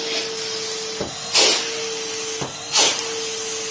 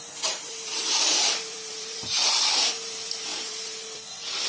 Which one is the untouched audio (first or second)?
first